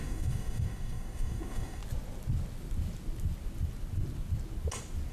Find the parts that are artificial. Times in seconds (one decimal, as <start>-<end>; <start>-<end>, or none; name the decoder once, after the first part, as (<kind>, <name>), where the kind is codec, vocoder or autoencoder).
0.0-1.8 (codec, DAC)